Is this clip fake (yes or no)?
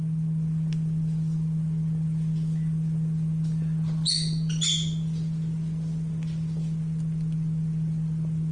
no